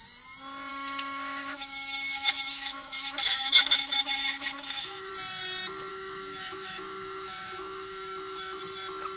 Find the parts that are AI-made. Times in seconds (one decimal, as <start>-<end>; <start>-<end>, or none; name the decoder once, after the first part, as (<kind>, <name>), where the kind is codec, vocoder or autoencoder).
0.7-5.1 (autoencoder, DAC-VAE); 5.9-8.6